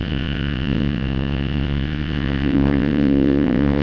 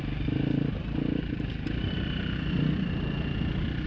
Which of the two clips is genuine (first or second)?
second